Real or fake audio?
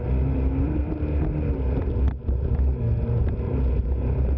real